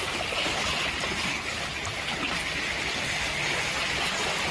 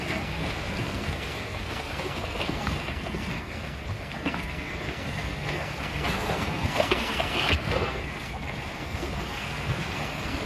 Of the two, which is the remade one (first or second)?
second